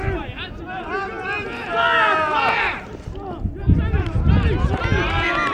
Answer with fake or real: real